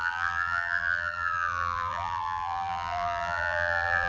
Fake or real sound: fake